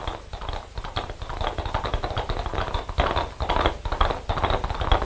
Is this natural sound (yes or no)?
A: yes